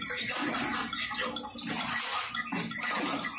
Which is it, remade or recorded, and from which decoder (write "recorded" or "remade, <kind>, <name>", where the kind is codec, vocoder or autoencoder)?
recorded